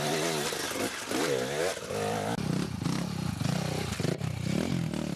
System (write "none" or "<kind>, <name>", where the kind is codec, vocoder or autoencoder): none